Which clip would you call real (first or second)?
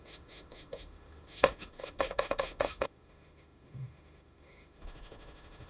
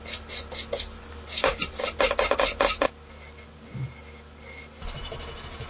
second